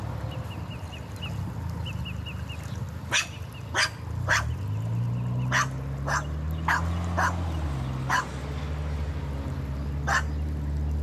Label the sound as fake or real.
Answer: real